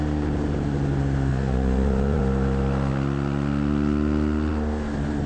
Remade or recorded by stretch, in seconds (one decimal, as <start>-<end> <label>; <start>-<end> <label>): 0.0-1.3 recorded; 1.3-2.2 remade; 2.2-5.3 recorded